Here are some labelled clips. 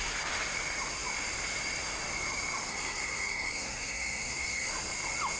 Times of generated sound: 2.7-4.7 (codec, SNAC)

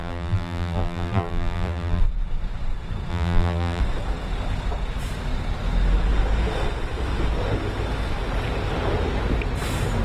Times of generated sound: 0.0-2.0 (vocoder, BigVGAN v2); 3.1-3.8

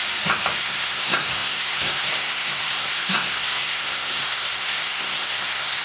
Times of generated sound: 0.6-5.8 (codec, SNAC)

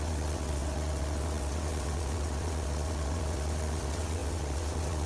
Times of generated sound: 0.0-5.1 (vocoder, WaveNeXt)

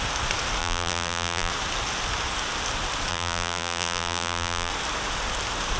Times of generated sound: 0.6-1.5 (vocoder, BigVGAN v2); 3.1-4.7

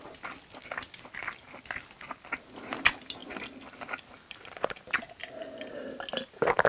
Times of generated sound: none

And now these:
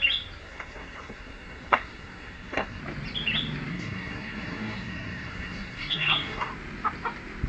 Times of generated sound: 0.4-2.8 (codec, SNAC); 3.7-6.5

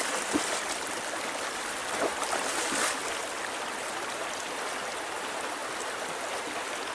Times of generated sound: none